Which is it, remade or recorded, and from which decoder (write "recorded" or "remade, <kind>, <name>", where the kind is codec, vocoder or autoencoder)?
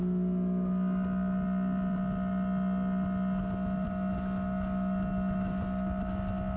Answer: recorded